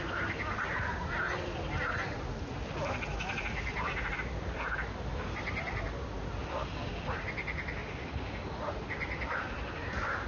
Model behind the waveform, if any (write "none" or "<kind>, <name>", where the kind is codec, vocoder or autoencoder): none